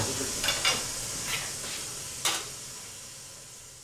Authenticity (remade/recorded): recorded